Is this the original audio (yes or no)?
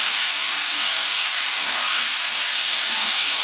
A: no